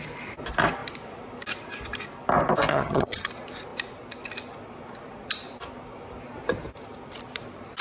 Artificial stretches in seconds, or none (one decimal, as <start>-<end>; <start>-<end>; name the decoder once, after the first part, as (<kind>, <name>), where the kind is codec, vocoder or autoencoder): 2.7-3.3 (vocoder, HiFi-GAN)